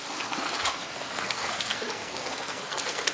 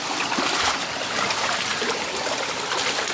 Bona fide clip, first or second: second